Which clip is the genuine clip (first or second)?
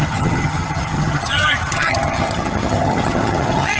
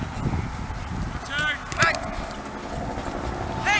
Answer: second